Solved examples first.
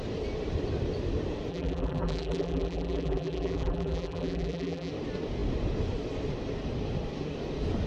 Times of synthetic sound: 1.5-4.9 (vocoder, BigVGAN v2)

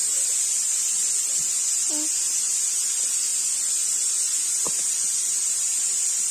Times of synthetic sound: none

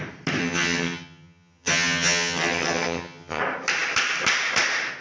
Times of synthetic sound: 0.4-3.4 (vocoder, HiFi-GAN)

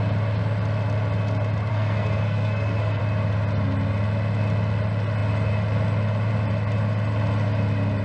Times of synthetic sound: 1.7-3.0 (codec, SNAC)

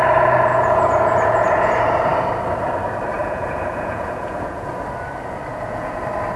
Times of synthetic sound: 0.5-1.7 (vocoder, Vocos); 3.2-4.7; 5.5-6.0

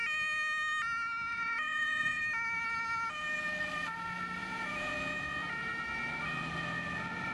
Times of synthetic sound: 1.3-2.2 (vocoder, Vocos); 4.4-4.9